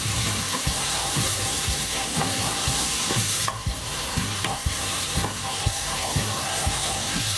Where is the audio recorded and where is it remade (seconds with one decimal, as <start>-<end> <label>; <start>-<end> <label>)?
0.0-7.4 remade